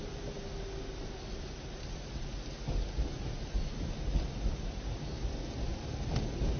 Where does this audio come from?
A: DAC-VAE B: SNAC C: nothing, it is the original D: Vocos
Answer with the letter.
C